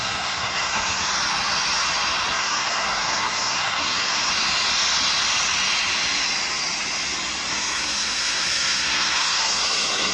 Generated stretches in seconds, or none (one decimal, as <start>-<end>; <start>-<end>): 0.0-1.1; 2.3-4.3; 7.5-10.1